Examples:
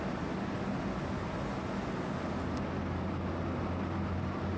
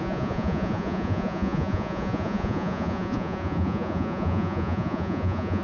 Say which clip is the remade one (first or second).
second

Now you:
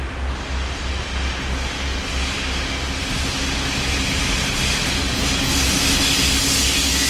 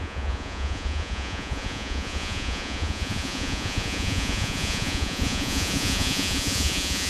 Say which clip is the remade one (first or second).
second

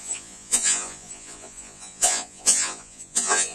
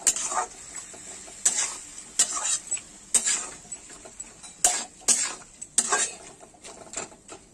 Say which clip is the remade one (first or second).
first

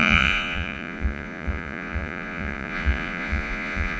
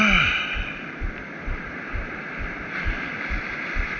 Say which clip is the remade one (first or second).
first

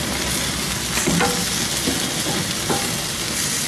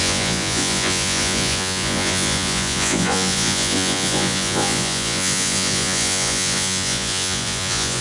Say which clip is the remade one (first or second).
second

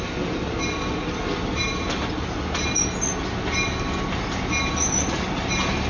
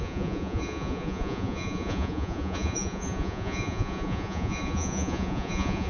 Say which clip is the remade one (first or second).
second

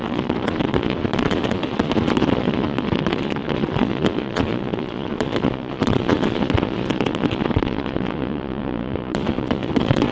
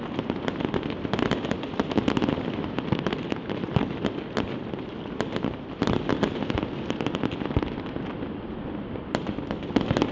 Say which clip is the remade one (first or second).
first